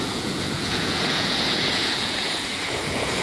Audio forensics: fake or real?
fake